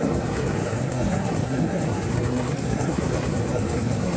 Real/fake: fake